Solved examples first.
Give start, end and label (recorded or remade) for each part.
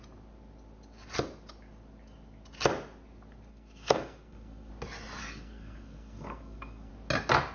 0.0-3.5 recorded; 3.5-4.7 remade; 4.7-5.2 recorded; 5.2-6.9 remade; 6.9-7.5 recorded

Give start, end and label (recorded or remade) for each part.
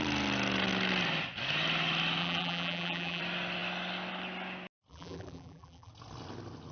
0.0-2.2 recorded; 2.2-3.2 remade; 3.2-4.9 recorded; 4.9-5.9 remade; 5.9-6.7 recorded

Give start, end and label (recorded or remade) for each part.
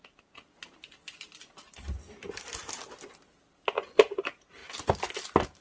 0.0-5.6 recorded